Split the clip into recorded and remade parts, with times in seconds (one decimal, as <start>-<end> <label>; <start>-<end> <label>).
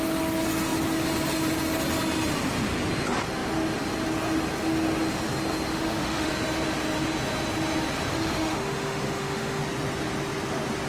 0.0-5.7 recorded; 5.7-6.3 remade; 6.3-8.1 recorded; 8.1-9.6 remade; 9.6-10.9 recorded